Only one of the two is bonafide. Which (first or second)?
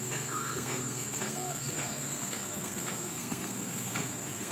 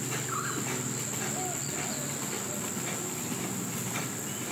second